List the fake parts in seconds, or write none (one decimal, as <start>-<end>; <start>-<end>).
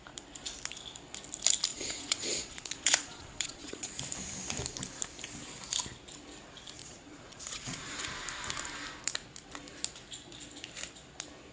1.7-3.9; 6.8-7.9